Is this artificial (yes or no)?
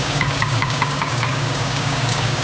yes